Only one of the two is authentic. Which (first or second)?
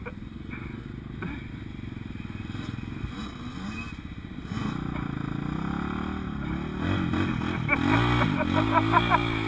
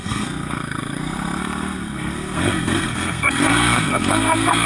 first